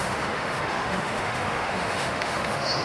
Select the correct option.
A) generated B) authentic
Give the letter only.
A